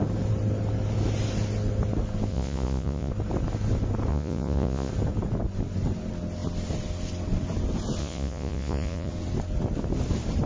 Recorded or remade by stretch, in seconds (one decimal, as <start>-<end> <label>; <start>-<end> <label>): 0.0-2.3 recorded; 2.3-3.1 remade; 3.1-4.1 recorded; 4.1-4.9 remade; 4.9-8.0 recorded; 8.0-9.1 remade; 9.1-10.5 recorded